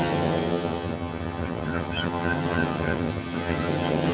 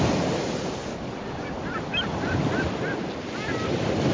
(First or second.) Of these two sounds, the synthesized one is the first